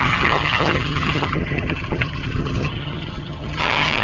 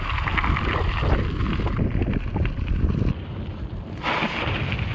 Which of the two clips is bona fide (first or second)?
second